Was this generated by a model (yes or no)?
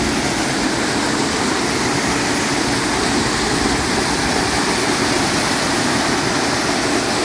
no